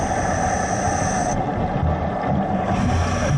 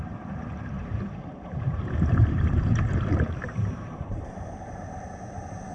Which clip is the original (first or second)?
first